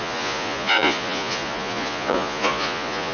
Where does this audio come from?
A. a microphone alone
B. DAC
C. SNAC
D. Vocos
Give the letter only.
D